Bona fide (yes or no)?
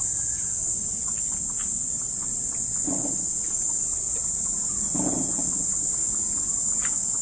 yes